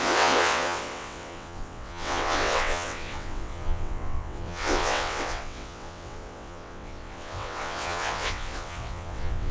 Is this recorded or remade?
remade